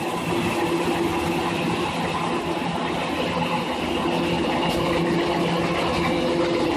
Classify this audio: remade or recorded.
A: recorded